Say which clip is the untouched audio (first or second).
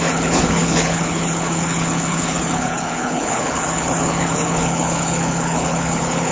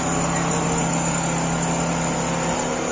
second